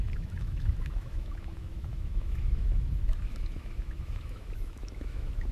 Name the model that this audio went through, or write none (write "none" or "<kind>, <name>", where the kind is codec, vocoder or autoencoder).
autoencoder, DAC-VAE